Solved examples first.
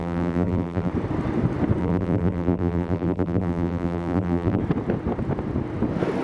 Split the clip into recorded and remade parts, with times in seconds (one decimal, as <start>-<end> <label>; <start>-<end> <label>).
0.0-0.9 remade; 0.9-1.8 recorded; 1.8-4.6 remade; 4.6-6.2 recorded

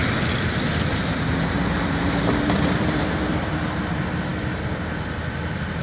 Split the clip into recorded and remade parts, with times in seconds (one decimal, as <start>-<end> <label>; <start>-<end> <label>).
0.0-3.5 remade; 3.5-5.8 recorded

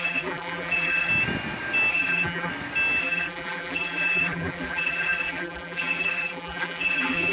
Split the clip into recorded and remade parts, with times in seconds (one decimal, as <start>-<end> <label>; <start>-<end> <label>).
0.0-1.1 remade; 1.1-1.9 recorded; 1.9-2.5 remade; 2.5-3.0 recorded; 3.0-7.3 remade